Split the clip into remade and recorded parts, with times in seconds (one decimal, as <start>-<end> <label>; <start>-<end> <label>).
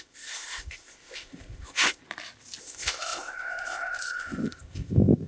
0.0-2.0 remade; 2.0-2.6 recorded; 2.6-5.3 remade